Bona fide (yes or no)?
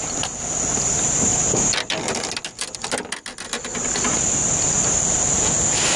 yes